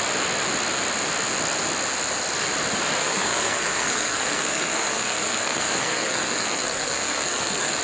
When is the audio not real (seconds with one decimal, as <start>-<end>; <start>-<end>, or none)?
3.0-7.8